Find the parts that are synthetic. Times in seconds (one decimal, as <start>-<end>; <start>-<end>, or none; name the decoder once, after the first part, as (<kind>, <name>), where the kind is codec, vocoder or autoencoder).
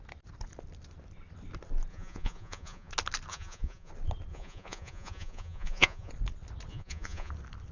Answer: 1.9-2.9 (vocoder, Vocos); 3.3-3.9; 4.3-6.1; 6.7-7.3